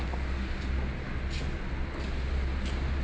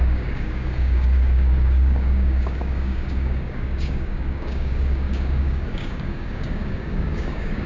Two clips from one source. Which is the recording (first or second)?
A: first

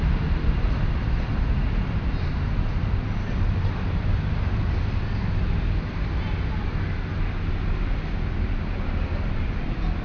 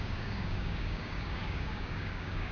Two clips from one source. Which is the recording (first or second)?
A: first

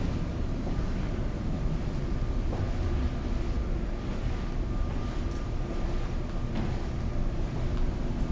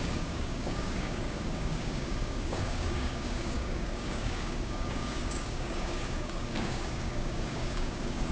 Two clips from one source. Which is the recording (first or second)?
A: first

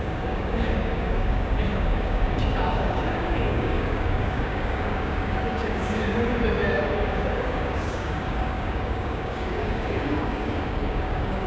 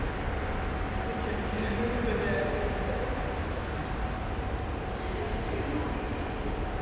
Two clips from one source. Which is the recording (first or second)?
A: second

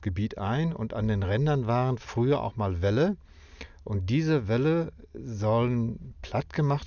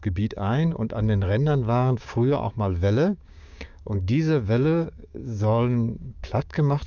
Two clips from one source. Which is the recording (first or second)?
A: first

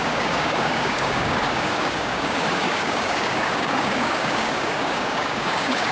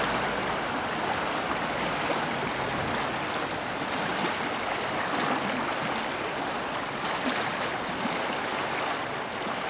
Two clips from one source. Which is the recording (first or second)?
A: second